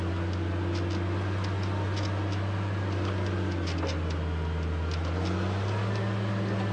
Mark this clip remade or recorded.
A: recorded